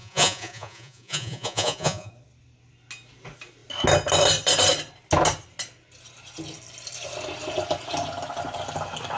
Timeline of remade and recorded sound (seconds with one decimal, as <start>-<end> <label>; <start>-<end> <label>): 0.0-2.1 remade; 2.1-9.2 recorded